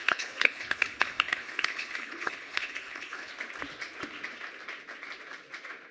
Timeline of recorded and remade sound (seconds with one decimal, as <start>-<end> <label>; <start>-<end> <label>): 0.0-3.3 remade; 3.3-5.9 recorded